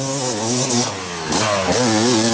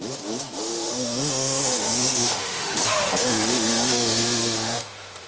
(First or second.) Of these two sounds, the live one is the first